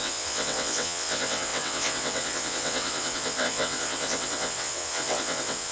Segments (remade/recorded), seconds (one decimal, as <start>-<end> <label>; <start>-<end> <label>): 0.0-5.7 remade